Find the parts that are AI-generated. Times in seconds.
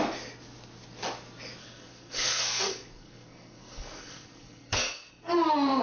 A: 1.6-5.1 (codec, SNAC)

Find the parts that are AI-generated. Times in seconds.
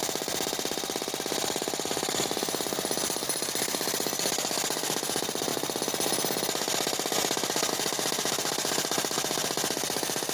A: 2.2-5.5 (vocoder, BigVGAN v2); 7.7-10.3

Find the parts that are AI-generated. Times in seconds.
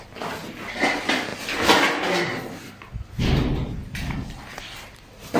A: none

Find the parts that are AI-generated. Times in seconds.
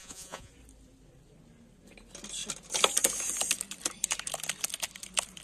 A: 0.0-0.5 (vocoder, Vocos)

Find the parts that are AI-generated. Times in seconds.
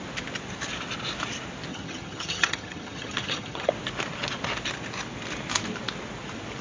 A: 1.7-3.7 (vocoder, HiFi-GAN)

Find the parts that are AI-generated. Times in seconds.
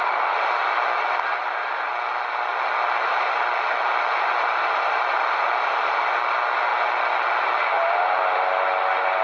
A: none